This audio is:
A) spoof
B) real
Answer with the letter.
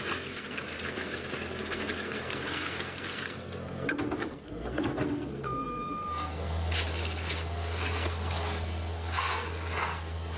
A